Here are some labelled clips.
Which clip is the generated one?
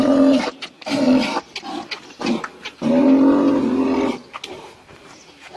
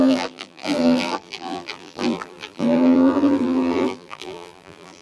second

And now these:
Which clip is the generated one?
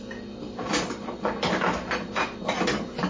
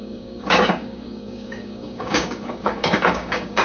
second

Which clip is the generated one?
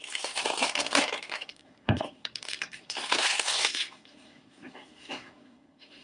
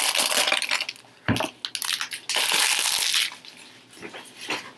first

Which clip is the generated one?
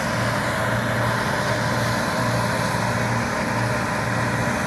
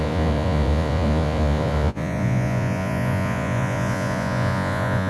second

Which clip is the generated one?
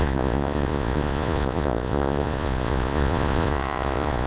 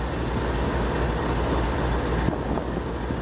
first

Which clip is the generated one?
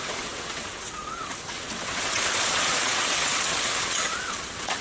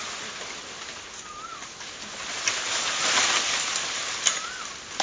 first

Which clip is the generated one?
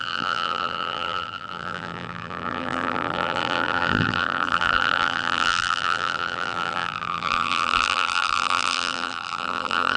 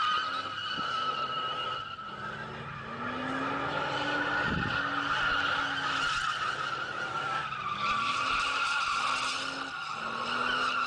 first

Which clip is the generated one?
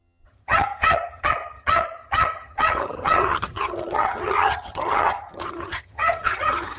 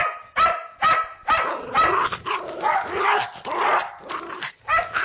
first